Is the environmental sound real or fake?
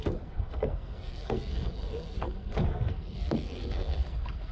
fake